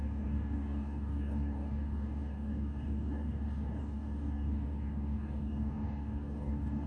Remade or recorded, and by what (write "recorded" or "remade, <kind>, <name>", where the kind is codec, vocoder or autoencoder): remade, codec, DAC